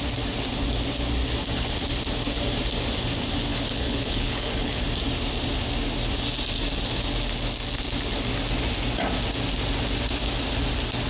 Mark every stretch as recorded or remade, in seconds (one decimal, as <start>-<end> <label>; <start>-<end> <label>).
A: 0.0-3.5 recorded; 3.5-4.8 remade; 4.8-11.1 recorded